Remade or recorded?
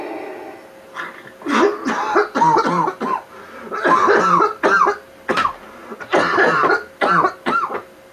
recorded